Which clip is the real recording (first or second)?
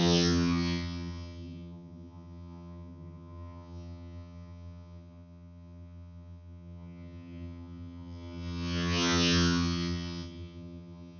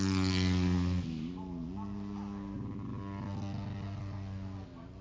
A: second